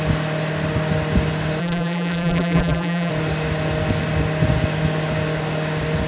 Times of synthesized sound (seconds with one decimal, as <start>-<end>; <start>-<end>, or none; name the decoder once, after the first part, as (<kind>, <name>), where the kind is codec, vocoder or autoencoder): 1.6-3.1 (vocoder, BigVGAN v2)